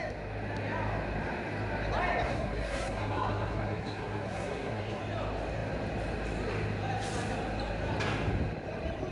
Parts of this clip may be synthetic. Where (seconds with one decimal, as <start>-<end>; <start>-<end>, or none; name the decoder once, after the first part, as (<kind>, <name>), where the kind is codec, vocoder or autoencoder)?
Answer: 2.3-5.0 (codec, SNAC)